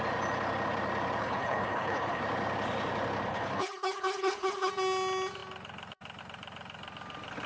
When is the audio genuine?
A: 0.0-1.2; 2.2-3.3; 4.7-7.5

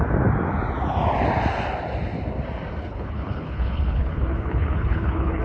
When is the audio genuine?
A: 0.0-2.8